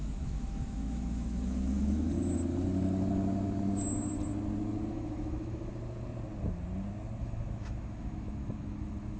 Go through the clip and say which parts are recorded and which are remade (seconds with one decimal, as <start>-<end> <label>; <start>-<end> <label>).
0.0-2.1 remade; 2.1-4.9 recorded; 4.9-5.7 remade; 5.7-7.2 recorded; 7.2-9.2 remade